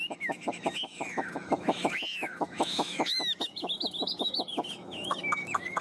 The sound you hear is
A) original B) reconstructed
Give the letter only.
B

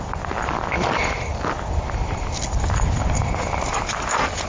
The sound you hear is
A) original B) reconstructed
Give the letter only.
A